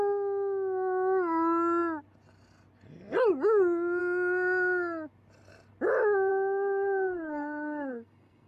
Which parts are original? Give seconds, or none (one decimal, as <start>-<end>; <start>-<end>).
0.0-6.3